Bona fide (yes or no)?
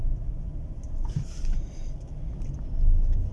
yes